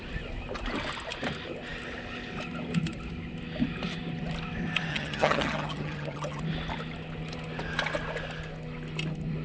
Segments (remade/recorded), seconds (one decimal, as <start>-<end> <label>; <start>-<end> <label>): 0.0-4.9 recorded; 4.9-6.4 remade; 6.4-9.4 recorded